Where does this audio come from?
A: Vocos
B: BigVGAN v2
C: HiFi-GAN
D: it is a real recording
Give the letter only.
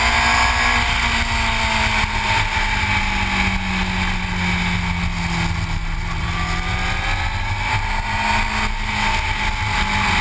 D